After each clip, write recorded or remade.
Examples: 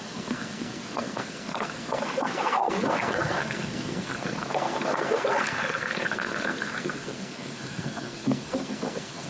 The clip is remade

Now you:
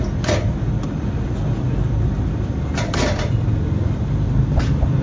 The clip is recorded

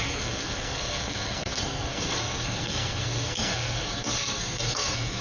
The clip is remade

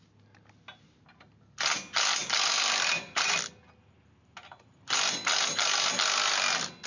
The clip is recorded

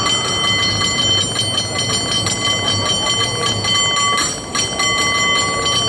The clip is recorded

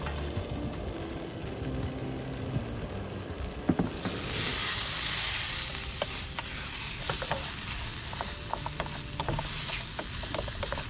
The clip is recorded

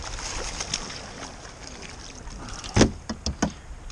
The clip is recorded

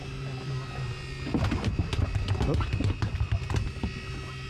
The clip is recorded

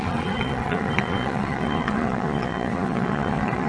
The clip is remade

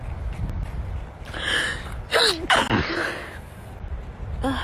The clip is recorded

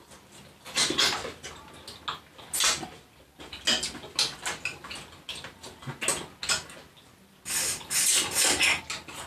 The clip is recorded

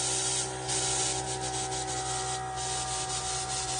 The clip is recorded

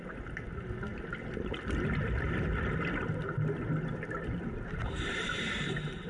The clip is recorded